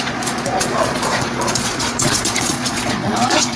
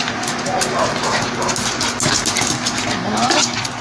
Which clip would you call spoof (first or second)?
first